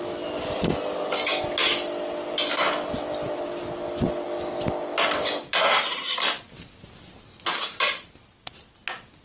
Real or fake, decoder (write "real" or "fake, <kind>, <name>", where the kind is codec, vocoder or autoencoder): real